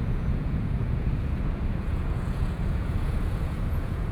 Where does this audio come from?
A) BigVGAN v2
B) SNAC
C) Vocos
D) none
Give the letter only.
C